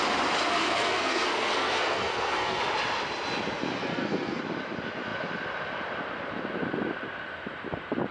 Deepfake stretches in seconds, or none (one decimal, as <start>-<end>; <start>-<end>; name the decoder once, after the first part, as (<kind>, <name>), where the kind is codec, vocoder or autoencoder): 0.5-2.6 (codec, SNAC); 3.8-4.4